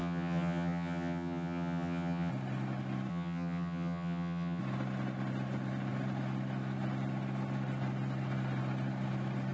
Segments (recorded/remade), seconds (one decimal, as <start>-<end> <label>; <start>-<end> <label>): 0.0-2.3 remade; 2.3-3.1 recorded; 3.1-4.6 remade; 4.6-9.5 recorded